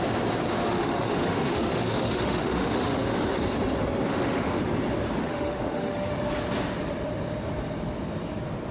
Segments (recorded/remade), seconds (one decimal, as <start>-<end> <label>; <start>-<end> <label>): 0.0-0.6 recorded; 0.6-3.4 remade; 3.4-4.1 recorded; 4.1-4.6 remade; 4.6-5.2 recorded; 5.2-6.1 remade; 6.1-8.7 recorded